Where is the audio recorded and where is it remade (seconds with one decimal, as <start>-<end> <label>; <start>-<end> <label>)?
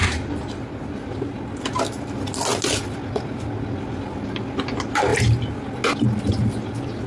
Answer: 0.0-7.1 recorded